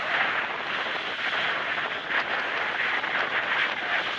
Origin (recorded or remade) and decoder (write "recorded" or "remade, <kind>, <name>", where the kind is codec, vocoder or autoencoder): recorded